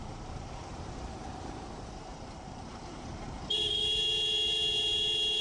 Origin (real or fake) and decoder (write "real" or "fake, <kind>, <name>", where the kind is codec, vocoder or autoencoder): fake, vocoder, BigVGAN v2